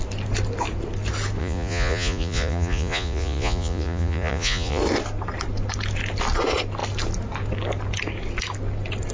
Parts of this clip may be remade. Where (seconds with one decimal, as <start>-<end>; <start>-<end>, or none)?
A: 1.4-4.8